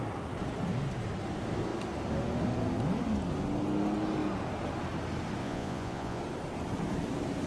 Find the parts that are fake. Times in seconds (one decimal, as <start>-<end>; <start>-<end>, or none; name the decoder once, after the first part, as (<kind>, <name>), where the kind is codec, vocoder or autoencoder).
5.4-6.2 (vocoder, Vocos)